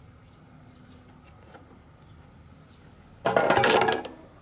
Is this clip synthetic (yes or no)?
no